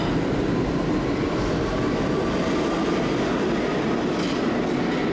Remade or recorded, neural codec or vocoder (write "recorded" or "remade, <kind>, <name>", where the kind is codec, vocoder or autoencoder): recorded